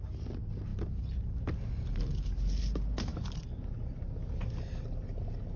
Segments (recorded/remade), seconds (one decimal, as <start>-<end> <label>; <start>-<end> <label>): 0.0-5.6 recorded